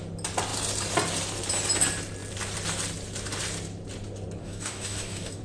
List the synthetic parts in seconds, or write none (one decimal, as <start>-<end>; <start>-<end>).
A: 4.4-5.4